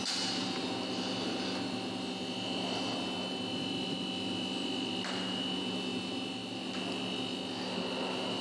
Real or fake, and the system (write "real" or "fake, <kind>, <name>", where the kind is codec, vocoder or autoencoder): real